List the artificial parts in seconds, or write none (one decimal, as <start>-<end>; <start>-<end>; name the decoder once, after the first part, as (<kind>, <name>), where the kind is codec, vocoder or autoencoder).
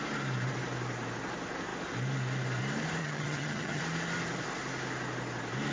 3.0-3.8 (vocoder, HiFi-GAN)